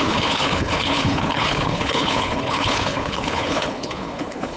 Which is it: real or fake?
fake